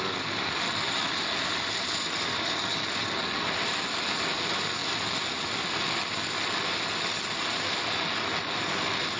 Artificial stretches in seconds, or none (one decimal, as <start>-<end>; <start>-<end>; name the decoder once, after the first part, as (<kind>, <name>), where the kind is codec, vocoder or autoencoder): none